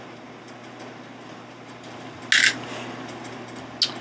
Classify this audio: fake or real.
real